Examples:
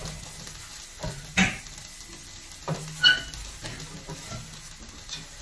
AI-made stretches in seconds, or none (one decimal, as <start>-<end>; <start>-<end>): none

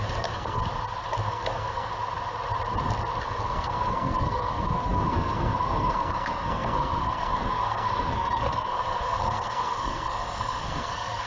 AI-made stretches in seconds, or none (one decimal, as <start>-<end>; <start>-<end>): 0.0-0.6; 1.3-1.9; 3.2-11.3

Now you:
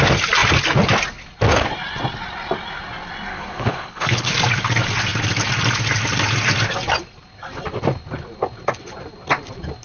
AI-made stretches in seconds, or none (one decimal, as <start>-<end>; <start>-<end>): 3.3-4.3

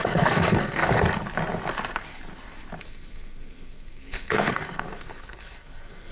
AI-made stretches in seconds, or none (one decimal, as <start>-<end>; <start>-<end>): 0.0-0.8; 2.8-6.1

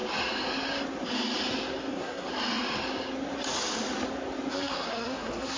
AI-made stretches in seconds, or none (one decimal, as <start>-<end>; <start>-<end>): 1.9-2.3; 4.5-5.6